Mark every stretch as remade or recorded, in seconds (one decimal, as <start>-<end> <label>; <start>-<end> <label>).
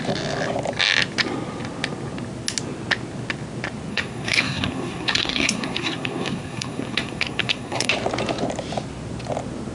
0.0-3.9 recorded; 3.9-7.9 remade; 7.9-9.7 recorded